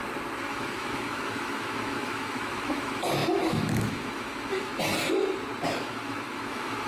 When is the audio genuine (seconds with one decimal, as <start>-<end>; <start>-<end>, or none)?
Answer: 0.0-0.5; 4.7-5.8